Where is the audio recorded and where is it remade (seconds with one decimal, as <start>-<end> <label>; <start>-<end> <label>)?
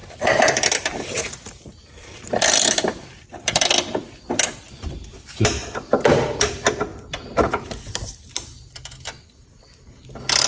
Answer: 0.0-3.7 remade; 3.7-10.5 recorded